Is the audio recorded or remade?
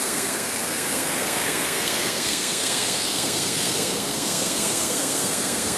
remade